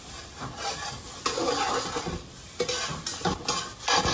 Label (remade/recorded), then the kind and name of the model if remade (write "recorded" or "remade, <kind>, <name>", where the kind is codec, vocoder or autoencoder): recorded